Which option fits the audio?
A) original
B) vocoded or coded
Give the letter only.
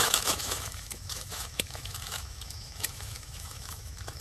B